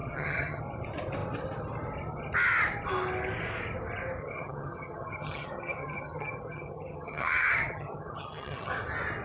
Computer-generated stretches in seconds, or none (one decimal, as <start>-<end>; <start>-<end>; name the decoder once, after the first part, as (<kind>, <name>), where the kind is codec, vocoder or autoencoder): 0.0-0.6 (vocoder, HiFi-GAN); 4.2-8.7

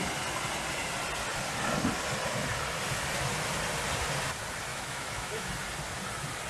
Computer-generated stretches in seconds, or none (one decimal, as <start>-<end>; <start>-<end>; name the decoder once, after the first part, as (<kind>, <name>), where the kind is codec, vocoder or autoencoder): 4.7-5.5 (autoencoder, DAC-VAE)

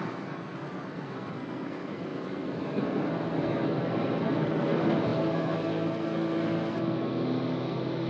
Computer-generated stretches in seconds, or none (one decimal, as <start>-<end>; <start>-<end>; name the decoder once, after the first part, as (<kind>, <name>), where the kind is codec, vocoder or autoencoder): 0.0-8.1 (codec, SNAC)

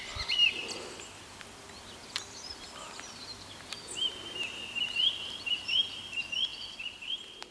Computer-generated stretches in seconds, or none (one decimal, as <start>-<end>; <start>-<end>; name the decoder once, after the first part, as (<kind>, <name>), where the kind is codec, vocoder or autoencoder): 0.6-1.6 (vocoder, BigVGAN v2); 2.0-6.0; 6.5-7.5

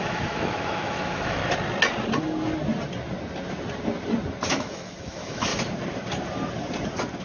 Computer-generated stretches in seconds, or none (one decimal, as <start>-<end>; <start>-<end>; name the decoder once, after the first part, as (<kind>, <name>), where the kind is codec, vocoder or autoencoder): 0.0-1.4 (autoencoder, DAC-VAE); 4.5-5.5